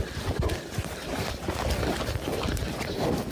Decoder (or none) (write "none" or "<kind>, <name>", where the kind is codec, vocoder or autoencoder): none